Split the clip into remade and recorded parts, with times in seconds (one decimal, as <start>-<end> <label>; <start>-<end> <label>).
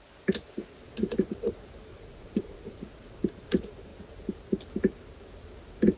0.0-1.9 recorded; 1.9-3.3 remade; 3.3-6.0 recorded